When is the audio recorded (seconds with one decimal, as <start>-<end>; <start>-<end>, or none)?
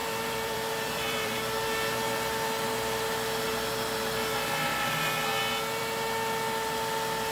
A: 1.4-7.3